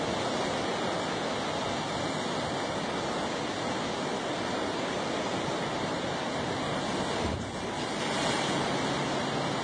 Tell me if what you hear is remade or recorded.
recorded